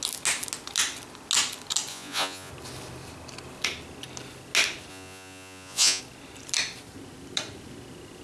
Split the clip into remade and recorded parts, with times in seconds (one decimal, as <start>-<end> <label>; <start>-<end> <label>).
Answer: 0.0-1.9 recorded; 1.9-2.5 remade; 2.5-4.9 recorded; 4.9-6.0 remade; 6.0-8.2 recorded